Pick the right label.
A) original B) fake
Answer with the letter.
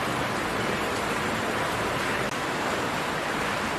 A